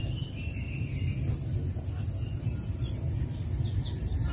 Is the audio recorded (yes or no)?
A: yes